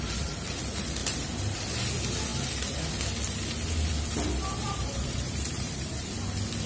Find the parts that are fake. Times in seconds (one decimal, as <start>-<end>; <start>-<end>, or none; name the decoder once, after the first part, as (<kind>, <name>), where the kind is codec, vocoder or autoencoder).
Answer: 1.0-1.6 (vocoder, BigVGAN v2); 4.6-6.1